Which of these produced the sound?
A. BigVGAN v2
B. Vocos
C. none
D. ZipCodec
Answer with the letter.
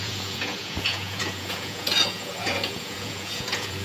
B